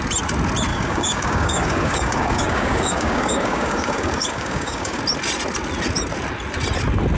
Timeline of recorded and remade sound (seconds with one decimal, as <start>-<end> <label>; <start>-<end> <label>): 0.0-0.7 recorded; 0.7-5.0 remade; 5.0-7.2 recorded